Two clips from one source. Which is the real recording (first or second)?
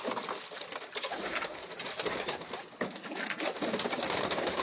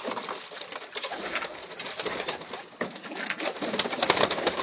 first